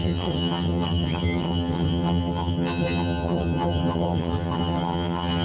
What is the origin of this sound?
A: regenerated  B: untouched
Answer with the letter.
A